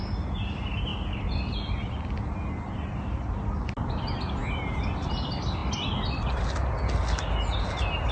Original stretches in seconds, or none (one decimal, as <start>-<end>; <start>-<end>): 0.0-8.1